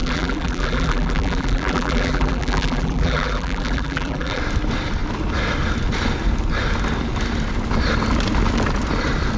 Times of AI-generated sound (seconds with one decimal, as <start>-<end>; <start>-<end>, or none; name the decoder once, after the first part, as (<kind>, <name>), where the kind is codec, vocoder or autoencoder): 0.0-4.4 (vocoder, BigVGAN v2)